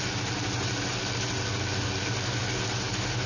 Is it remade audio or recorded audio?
recorded